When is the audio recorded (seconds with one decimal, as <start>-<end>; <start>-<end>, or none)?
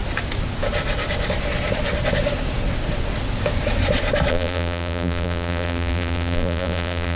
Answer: 0.0-4.3